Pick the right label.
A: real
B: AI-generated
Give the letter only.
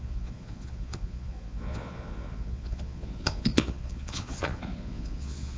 B